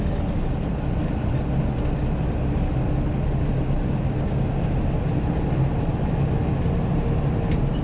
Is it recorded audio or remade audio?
recorded